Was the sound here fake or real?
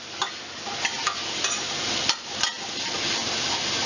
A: real